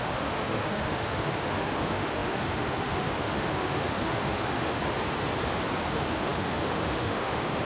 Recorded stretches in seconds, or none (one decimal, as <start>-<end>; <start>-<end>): 4.8-5.8